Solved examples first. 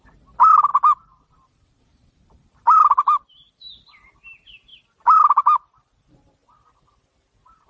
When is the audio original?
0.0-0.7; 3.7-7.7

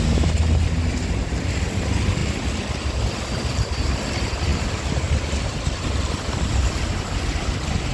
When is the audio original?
0.0-2.2; 2.9-4.5

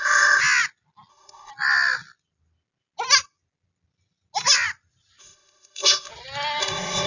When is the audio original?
0.4-1.1; 1.5-5.2; 6.1-6.6

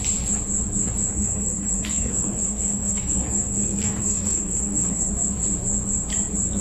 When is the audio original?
0.0-1.1; 5.1-6.6

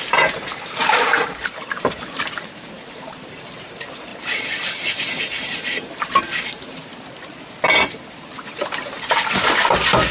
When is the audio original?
4.1-5.2; 6.8-8.9

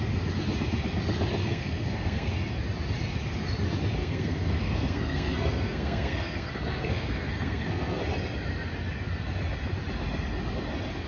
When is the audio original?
0.0-1.4; 2.3-4.0; 8.0-11.1

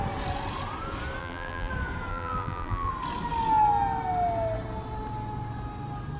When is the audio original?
0.0-1.2; 1.7-2.1; 2.9-6.2